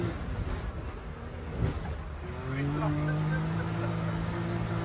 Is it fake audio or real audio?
real